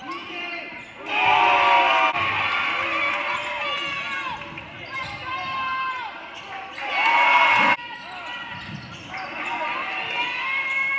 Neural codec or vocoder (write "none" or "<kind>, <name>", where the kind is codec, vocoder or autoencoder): none